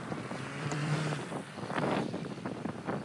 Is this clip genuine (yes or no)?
no